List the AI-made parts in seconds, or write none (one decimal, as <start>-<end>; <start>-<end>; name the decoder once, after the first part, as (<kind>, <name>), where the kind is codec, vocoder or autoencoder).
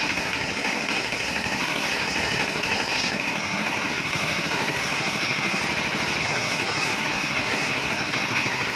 0.0-5.6 (codec, SNAC); 6.2-8.8